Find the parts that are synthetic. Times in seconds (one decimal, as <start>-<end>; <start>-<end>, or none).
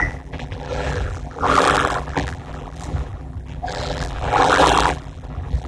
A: 0.0-5.7